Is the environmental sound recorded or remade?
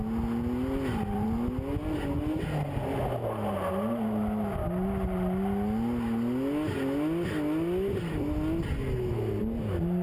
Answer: recorded